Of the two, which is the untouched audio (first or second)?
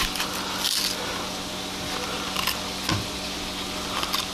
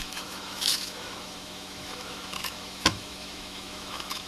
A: first